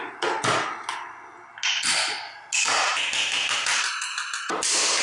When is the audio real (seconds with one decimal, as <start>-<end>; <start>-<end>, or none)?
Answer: 0.0-5.0